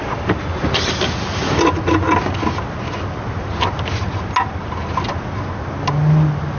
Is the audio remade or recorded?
recorded